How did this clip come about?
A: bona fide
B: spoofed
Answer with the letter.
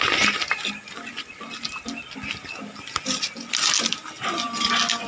A